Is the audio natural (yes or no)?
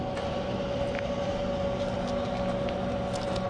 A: yes